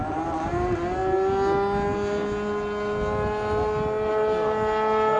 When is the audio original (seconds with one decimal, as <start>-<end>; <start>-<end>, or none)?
0.0-5.2